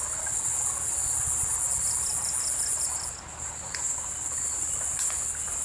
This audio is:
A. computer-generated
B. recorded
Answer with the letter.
B